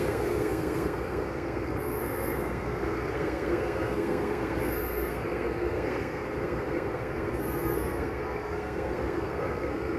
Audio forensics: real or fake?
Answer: fake